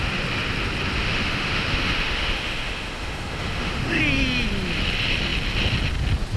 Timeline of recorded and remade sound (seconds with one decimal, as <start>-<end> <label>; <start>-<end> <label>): 0.0-1.0 recorded; 1.0-4.0 remade; 4.0-6.4 recorded